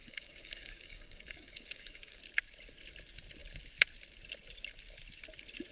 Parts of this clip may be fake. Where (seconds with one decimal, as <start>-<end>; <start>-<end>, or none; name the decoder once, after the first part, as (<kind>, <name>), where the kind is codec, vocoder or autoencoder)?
0.0-2.2 (codec, DAC)